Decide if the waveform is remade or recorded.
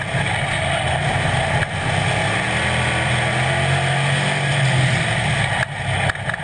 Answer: recorded